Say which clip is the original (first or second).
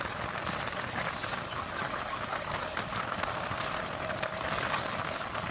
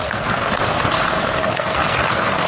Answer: first